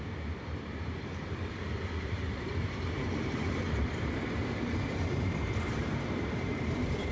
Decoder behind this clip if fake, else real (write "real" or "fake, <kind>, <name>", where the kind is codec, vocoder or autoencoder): fake, vocoder, BigVGAN v2